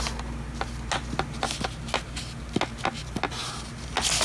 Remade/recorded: recorded